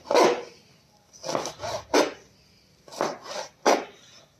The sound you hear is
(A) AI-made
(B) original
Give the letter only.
B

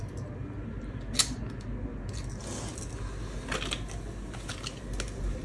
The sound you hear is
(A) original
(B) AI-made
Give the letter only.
A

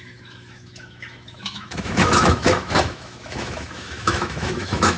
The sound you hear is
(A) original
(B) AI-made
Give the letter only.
B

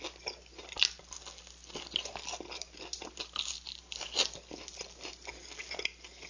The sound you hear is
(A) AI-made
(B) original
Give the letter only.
B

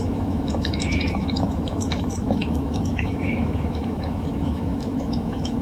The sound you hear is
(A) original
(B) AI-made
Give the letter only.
B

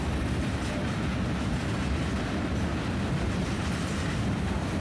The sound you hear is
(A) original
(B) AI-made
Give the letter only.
A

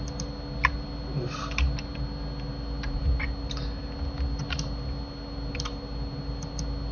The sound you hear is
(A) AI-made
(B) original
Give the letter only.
B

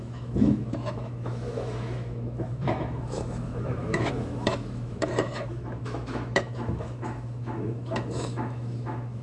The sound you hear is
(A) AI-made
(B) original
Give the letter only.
A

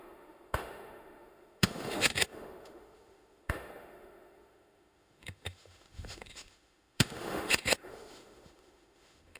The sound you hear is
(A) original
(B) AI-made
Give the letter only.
B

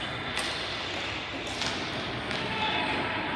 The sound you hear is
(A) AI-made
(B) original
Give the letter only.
B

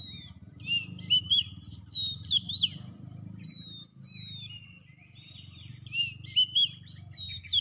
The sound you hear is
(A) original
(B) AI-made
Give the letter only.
A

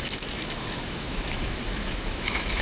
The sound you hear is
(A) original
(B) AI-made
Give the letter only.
B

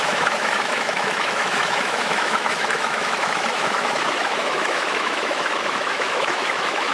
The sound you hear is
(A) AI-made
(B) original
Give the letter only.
A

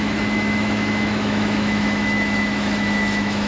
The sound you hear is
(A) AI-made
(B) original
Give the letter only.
A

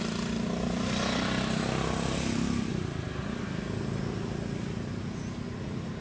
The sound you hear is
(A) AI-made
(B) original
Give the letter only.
B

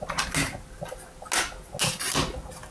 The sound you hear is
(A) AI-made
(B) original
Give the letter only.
B